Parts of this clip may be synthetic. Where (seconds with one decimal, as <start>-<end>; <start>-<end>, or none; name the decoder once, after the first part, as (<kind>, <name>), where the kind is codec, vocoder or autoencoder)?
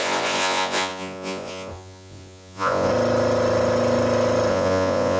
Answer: 0.0-2.9 (vocoder, Vocos); 4.5-5.2